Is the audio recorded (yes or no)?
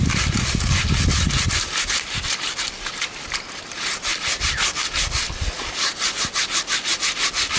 yes